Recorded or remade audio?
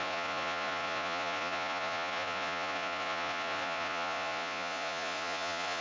remade